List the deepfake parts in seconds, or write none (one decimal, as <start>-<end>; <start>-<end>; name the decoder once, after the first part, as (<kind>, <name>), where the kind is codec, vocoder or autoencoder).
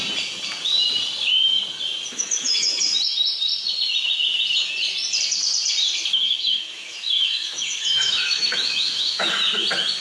2.1-2.8 (autoencoder, DAC-VAE); 6.1-9.3